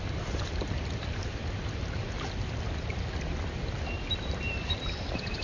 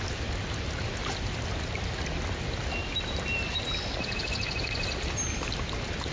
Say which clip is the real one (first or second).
second